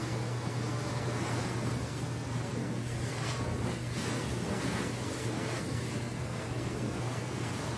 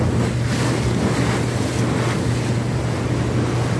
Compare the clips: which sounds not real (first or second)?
first